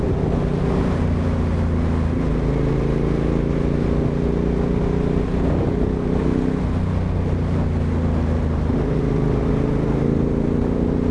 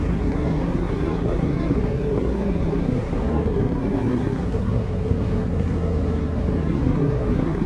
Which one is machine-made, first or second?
second